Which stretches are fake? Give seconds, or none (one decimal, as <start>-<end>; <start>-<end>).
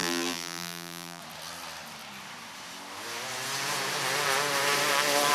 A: 0.0-1.2